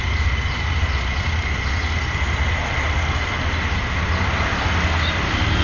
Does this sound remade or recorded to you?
recorded